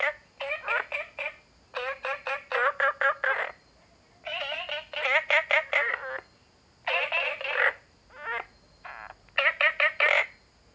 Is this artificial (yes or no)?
no